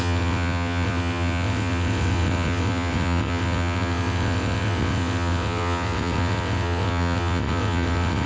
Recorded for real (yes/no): no